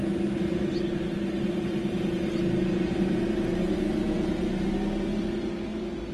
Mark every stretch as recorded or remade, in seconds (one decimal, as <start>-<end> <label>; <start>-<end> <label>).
0.0-6.1 recorded